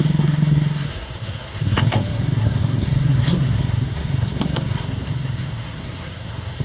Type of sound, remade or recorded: remade